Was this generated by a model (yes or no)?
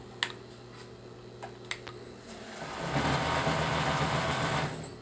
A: no